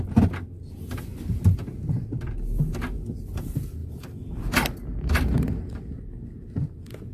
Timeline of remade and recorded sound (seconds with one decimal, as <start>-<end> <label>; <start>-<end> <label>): 0.0-3.8 recorded; 3.8-6.0 remade; 6.0-7.1 recorded